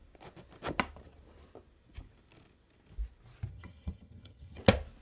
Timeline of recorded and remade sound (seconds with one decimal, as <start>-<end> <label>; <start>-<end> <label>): 0.0-3.5 recorded; 3.5-4.6 remade; 4.6-5.0 recorded

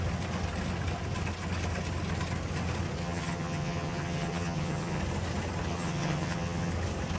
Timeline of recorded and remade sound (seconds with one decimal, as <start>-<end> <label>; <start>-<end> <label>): 0.0-3.0 recorded; 3.0-5.0 remade; 5.0-5.7 recorded; 5.7-6.7 remade; 6.7-7.2 recorded

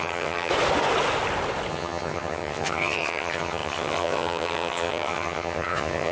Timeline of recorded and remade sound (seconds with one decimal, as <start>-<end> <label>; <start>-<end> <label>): 0.0-0.5 remade; 0.5-1.7 recorded; 1.7-6.1 remade

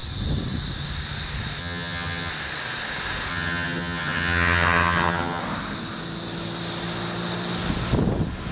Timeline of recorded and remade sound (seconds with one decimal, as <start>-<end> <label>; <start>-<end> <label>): 0.0-1.6 recorded; 1.6-2.3 remade; 2.3-3.3 recorded; 3.3-5.4 remade; 5.4-8.5 recorded

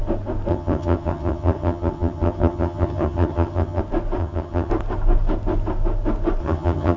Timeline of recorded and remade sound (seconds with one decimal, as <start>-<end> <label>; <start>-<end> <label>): 0.0-0.5 recorded; 0.5-3.8 remade; 3.8-4.2 recorded; 4.2-4.7 remade; 4.7-6.4 recorded; 6.4-7.0 remade

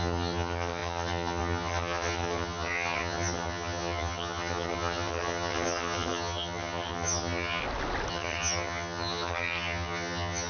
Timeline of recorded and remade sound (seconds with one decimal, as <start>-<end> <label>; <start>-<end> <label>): 0.0-7.6 remade; 7.6-8.1 recorded; 8.1-10.5 remade

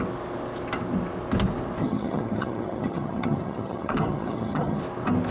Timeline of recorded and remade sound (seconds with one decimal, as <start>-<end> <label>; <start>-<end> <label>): 0.0-1.8 recorded; 1.8-4.8 remade; 4.8-5.3 recorded